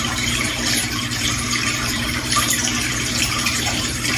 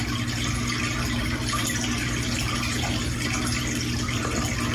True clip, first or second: second